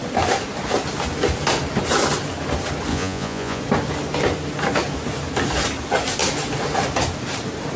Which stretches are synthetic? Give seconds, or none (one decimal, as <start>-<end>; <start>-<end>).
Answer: 2.9-3.6